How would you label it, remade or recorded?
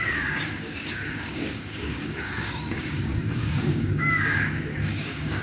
remade